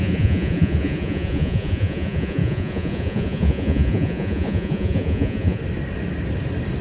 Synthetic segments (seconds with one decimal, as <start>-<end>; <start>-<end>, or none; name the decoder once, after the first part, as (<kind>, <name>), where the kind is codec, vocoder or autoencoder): 0.0-5.6 (vocoder, Vocos)